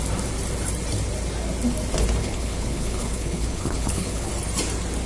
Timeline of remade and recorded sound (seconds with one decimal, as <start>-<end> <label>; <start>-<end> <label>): 0.0-2.2 recorded; 2.2-4.3 remade; 4.3-5.1 recorded